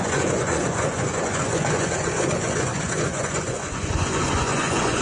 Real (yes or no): no